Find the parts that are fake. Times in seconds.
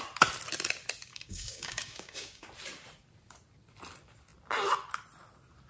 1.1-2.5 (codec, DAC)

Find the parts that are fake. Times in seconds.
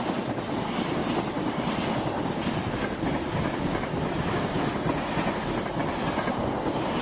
none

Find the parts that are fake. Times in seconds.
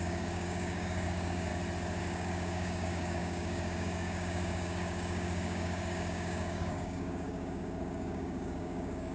0.0-1.5 (codec, DAC); 2.0-9.1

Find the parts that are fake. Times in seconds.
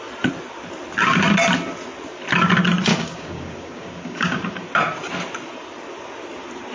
2.9-4.7 (codec, DAC)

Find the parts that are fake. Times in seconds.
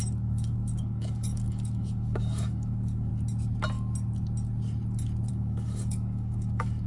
0.0-3.1 (codec, DAC); 5.3-6.9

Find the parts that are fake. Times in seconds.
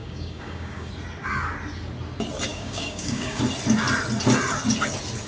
0.0-0.9 (codec, DAC); 2.5-3.4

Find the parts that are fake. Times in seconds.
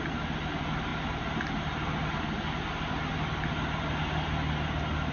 none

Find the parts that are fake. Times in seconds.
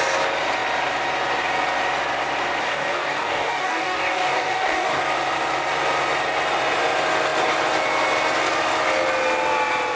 2.6-5.0 (codec, DAC)